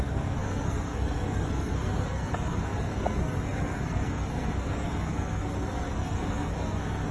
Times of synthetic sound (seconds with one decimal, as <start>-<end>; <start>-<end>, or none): 0.0-7.1